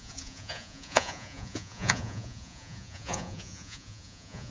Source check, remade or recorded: remade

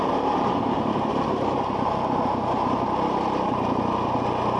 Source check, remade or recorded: recorded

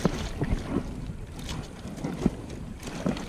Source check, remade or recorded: recorded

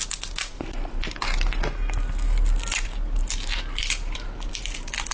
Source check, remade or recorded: recorded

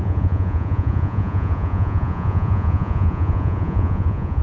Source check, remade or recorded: remade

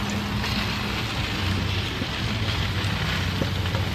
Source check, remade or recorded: recorded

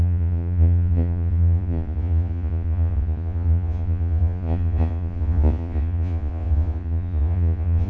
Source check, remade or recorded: remade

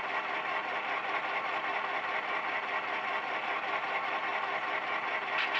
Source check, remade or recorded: recorded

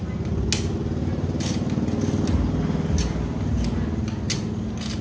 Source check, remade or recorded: recorded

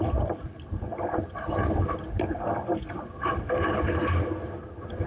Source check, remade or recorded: recorded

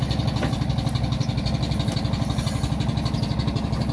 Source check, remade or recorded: recorded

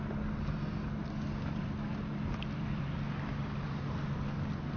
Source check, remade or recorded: recorded